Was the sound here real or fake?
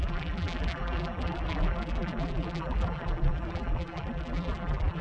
fake